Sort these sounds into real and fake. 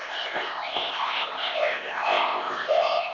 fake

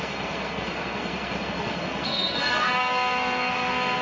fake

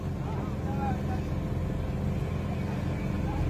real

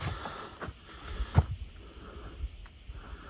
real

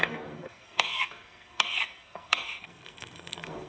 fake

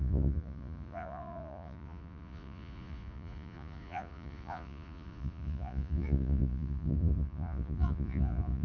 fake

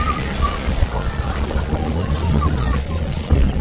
fake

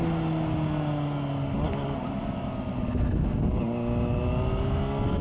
real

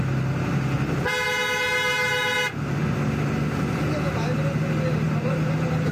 real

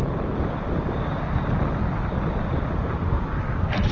real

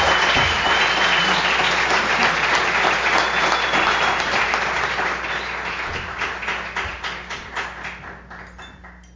real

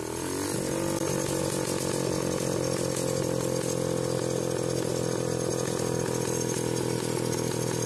real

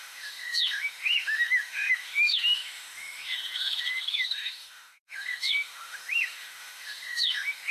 fake